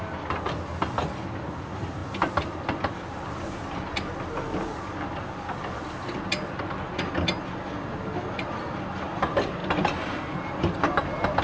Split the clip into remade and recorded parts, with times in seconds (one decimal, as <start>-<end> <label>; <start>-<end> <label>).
0.0-11.4 recorded